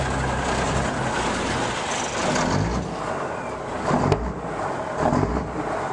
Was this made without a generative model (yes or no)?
yes